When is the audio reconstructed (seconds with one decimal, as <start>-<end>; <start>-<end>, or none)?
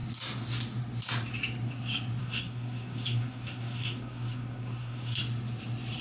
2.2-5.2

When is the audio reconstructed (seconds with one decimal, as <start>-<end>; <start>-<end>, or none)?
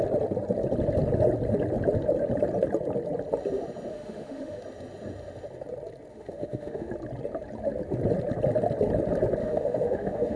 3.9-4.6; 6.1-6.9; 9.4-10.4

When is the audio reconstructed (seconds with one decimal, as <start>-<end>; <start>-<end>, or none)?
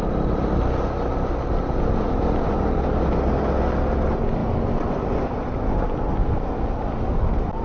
none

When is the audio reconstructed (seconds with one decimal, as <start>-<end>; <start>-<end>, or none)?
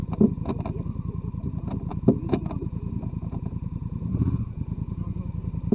0.0-0.5; 1.9-5.3